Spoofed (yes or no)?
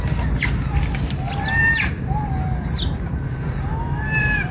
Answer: no